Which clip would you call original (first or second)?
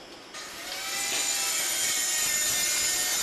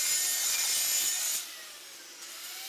first